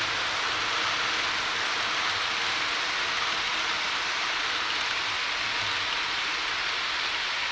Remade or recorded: recorded